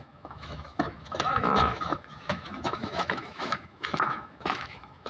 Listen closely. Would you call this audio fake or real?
fake